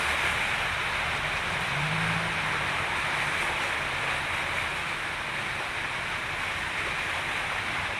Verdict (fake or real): real